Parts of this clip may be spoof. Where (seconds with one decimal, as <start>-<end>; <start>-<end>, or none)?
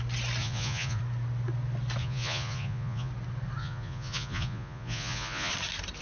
0.4-1.0; 2.0-3.1; 3.6-5.5